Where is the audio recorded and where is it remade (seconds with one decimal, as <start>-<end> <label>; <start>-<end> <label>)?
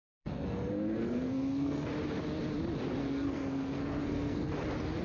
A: 0.0-1.9 remade; 1.9-3.0 recorded; 3.0-4.5 remade; 4.5-5.0 recorded